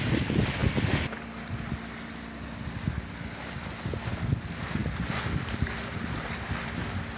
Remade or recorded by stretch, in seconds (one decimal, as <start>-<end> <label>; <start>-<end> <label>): 0.0-4.8 recorded; 4.8-5.6 remade; 5.6-7.2 recorded